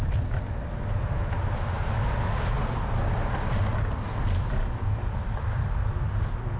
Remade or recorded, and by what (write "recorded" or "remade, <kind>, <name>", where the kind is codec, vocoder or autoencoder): recorded